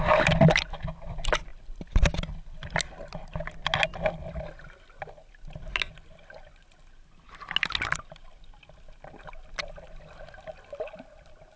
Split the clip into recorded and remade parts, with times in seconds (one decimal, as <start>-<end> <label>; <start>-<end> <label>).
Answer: 0.0-11.6 recorded